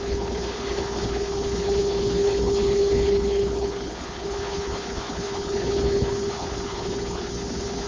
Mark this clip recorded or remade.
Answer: remade